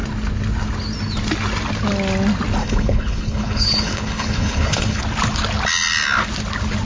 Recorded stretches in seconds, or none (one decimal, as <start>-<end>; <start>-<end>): 0.0-2.6; 5.0-6.9